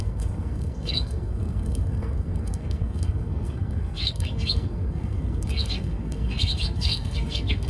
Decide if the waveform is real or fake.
fake